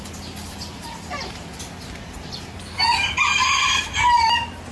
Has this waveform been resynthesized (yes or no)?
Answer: no